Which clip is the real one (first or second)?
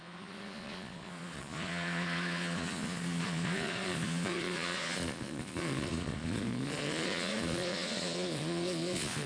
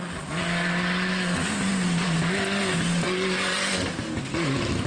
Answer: second